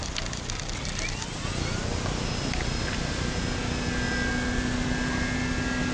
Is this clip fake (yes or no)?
no